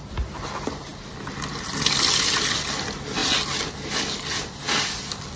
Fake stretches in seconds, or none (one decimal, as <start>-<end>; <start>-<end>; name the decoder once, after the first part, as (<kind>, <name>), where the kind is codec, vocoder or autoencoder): none